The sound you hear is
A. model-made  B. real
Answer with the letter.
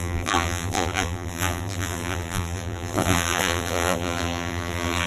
A